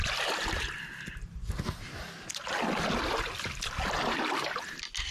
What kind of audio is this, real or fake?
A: real